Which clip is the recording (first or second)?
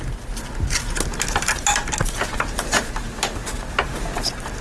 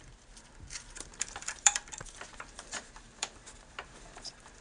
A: first